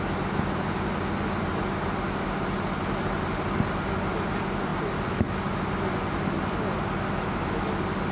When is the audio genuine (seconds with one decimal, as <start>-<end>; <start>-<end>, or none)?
0.0-8.1